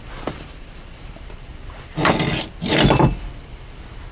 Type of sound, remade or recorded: recorded